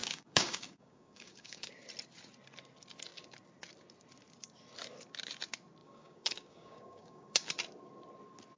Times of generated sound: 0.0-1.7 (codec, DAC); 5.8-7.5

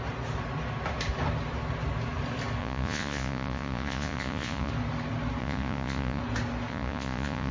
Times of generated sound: 2.6-4.7 (vocoder, Vocos); 5.4-6.2; 6.7-7.5